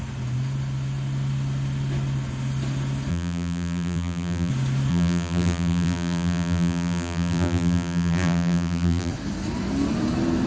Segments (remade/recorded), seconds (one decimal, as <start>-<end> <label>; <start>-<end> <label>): 0.0-3.1 recorded; 3.1-4.5 remade; 4.5-4.9 recorded; 4.9-9.1 remade; 9.1-10.5 recorded

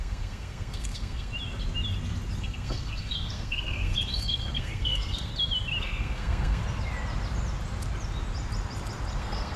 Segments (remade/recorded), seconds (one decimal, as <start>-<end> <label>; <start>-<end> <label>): 0.0-1.3 remade; 1.3-2.4 recorded; 2.4-5.3 remade; 5.3-5.8 recorded; 5.8-6.6 remade; 6.6-9.2 recorded; 9.2-9.6 remade

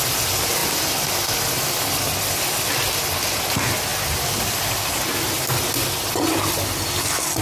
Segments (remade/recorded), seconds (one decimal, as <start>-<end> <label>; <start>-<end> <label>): 0.0-7.4 recorded

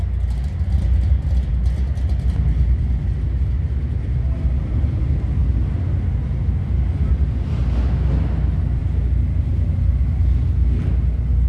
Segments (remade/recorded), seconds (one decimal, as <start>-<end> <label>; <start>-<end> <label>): 0.0-11.5 recorded